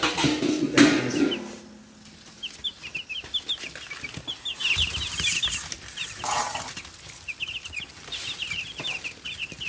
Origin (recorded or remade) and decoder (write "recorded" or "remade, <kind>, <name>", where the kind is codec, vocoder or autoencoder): recorded